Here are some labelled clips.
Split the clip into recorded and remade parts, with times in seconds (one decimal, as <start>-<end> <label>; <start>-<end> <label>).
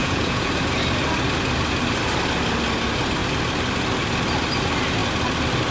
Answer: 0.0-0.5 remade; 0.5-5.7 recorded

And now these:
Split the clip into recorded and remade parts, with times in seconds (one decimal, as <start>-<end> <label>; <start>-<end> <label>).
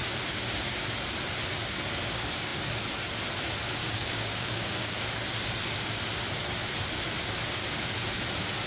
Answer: 0.0-3.8 recorded; 3.8-5.0 remade; 5.0-8.7 recorded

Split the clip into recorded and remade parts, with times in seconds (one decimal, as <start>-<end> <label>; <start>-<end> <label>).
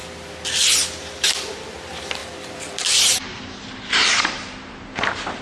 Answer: 0.0-0.9 recorded; 0.9-5.4 remade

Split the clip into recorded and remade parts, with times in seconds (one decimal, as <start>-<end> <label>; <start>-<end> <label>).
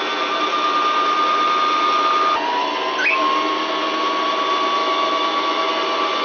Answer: 0.0-4.8 recorded; 4.8-5.7 remade; 5.7-6.2 recorded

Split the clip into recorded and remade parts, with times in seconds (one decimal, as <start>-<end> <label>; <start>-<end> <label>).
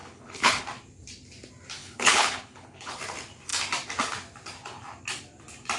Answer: 0.0-0.6 remade; 0.6-1.8 recorded; 1.8-3.0 remade; 3.0-5.8 recorded